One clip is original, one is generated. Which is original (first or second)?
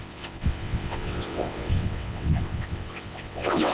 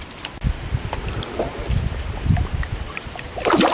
second